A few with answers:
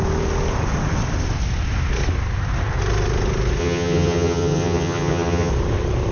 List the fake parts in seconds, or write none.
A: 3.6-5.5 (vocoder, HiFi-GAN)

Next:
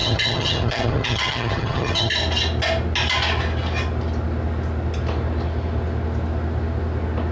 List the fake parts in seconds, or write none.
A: 0.0-2.1 (vocoder, HiFi-GAN)